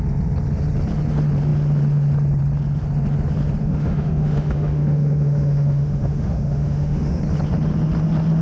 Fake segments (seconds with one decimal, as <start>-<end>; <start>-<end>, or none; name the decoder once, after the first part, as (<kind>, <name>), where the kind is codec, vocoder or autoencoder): 3.6-7.2 (autoencoder, DAC-VAE)